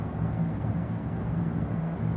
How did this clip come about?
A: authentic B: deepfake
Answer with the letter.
B